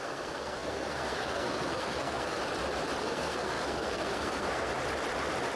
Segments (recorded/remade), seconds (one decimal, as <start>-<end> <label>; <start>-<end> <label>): 0.0-2.4 remade; 2.4-3.0 recorded; 3.0-4.7 remade; 4.7-5.6 recorded